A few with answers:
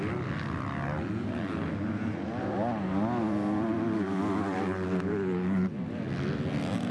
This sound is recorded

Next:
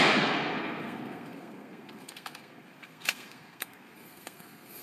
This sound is remade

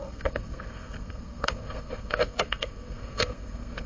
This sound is remade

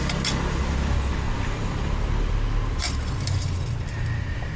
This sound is recorded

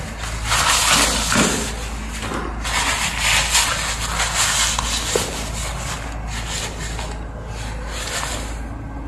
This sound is recorded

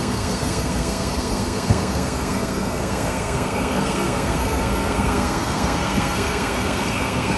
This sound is remade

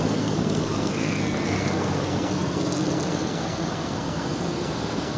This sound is remade